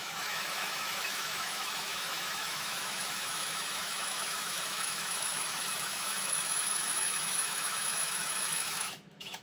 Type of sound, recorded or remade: remade